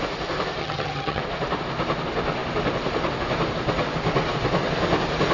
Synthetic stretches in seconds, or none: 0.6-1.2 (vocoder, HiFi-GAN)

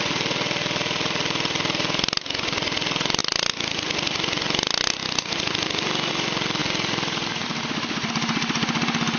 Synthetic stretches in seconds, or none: 6.6-8.1 (vocoder, BigVGAN v2)

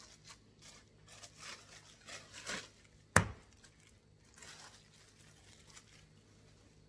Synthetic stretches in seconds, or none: none

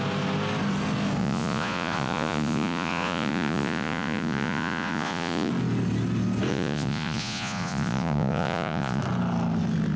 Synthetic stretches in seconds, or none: 1.2-5.5 (vocoder, Vocos); 6.5-9.0

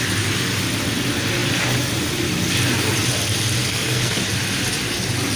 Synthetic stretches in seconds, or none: 3.6-4.2 (codec, SNAC)

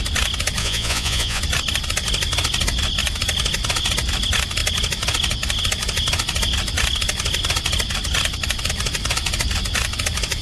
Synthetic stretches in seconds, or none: 0.6-1.4 (vocoder, Vocos)

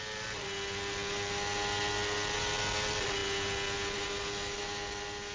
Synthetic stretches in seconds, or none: none